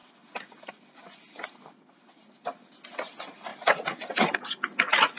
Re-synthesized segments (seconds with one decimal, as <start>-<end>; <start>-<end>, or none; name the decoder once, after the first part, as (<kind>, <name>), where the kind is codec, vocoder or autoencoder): none